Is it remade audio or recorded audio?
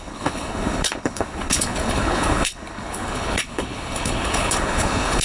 remade